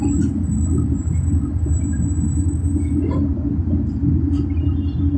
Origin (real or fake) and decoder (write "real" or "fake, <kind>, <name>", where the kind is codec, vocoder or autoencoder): real